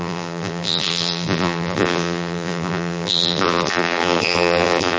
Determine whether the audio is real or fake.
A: fake